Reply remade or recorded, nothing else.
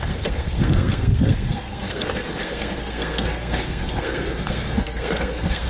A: remade